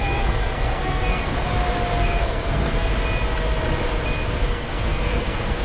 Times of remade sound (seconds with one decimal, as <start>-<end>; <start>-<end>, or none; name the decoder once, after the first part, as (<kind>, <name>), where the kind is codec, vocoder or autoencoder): 0.0-1.5 (codec, SNAC); 2.0-2.9; 4.5-5.6